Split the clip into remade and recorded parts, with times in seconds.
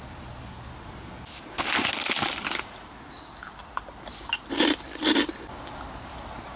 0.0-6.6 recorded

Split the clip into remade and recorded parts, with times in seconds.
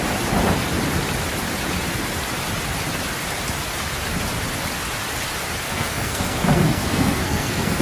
0.0-5.7 recorded; 5.7-7.8 remade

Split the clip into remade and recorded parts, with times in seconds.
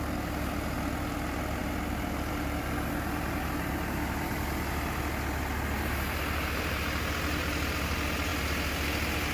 0.0-9.3 recorded